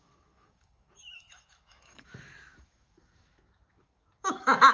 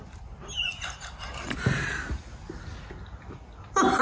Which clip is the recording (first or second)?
second